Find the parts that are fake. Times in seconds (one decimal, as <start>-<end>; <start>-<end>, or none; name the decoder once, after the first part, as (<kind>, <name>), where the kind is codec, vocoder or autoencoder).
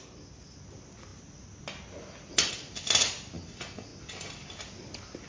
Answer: none